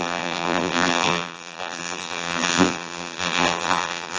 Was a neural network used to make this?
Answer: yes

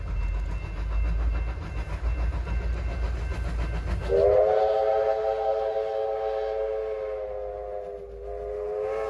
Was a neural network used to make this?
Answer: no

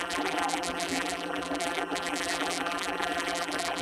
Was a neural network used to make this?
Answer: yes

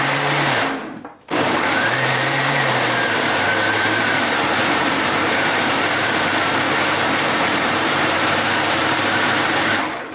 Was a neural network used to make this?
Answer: yes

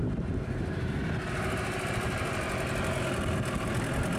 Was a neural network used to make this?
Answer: no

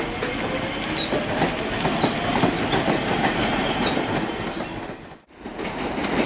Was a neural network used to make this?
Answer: no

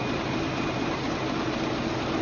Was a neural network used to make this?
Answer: no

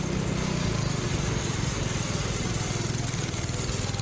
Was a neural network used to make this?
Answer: no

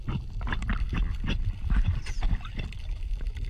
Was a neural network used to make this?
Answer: no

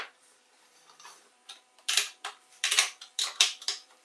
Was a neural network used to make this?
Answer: yes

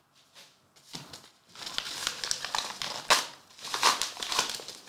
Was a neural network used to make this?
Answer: no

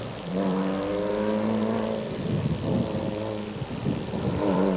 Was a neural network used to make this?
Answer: yes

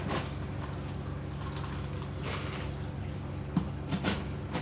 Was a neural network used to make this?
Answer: no